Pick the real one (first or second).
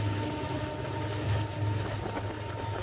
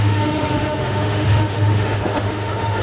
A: first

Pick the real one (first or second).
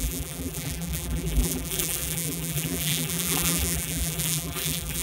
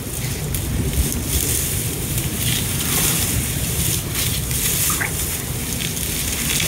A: second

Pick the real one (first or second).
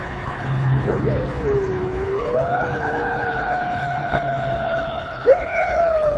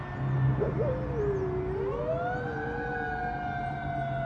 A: second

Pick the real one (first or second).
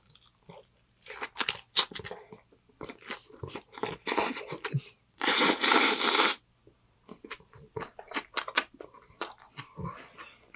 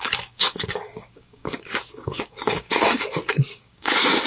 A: first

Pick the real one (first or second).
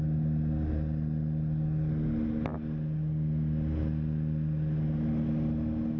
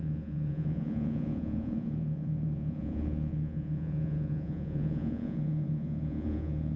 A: first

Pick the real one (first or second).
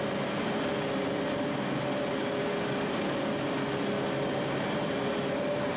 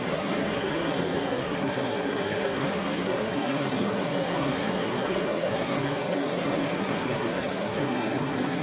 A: first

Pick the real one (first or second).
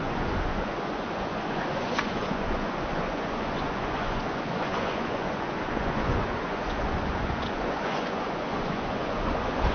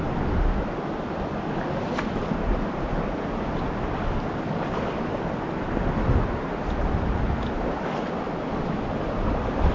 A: second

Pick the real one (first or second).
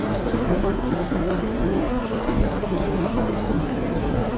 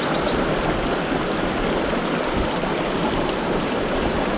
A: second